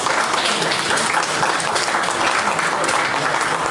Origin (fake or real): real